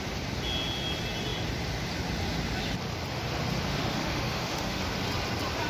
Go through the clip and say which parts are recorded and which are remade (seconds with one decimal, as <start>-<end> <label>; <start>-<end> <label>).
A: 0.0-3.7 recorded; 3.7-4.8 remade; 4.8-5.7 recorded

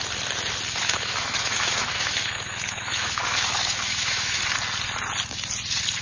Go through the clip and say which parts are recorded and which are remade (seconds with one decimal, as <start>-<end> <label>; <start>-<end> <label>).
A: 0.0-0.8 recorded; 0.8-4.4 remade; 4.4-6.0 recorded

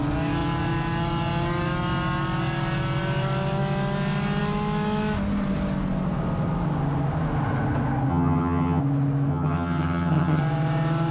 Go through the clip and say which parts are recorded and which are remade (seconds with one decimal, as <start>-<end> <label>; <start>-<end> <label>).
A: 0.0-8.1 recorded; 8.1-8.8 remade; 8.8-9.3 recorded; 9.3-10.4 remade; 10.4-11.1 recorded